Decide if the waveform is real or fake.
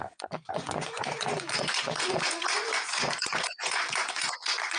fake